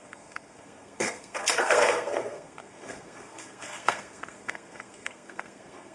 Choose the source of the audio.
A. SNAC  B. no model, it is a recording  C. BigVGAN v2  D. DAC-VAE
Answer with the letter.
A